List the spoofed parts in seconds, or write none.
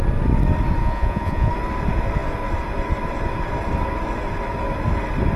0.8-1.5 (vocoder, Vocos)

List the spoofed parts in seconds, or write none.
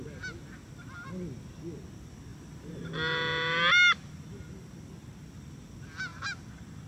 2.3-2.8 (vocoder, BigVGAN v2); 6.1-6.9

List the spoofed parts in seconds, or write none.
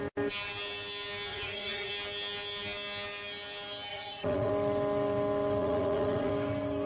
1.3-1.9 (vocoder, Vocos); 3.9-4.5; 5.6-6.3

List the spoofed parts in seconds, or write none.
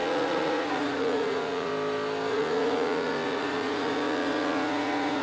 0.0-1.7 (vocoder, Vocos); 2.3-5.2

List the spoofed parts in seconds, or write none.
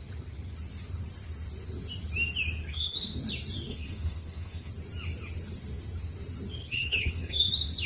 2.7-3.2 (codec, HILCodec); 3.7-4.7; 6.6-7.5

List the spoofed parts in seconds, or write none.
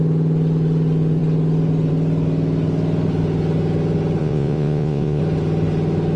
4.2-5.2 (vocoder, Vocos)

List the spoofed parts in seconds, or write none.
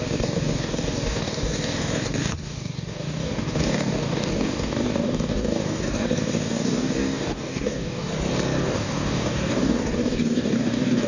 0.0-8.1 (codec, DAC); 8.6-11.1